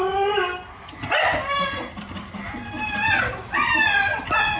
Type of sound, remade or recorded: recorded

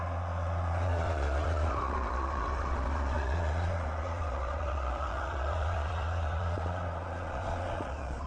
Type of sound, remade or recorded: remade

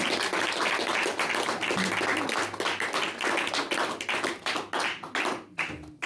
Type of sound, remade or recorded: recorded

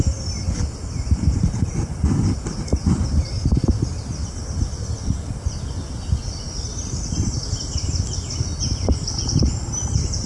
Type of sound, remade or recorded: recorded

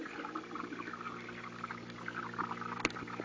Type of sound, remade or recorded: recorded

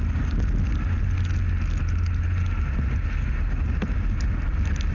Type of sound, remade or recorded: recorded